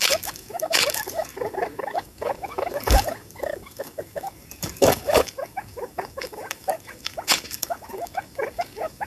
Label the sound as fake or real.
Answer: fake